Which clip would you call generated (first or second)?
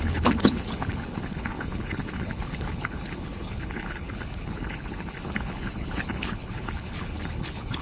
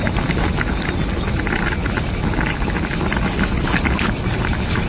first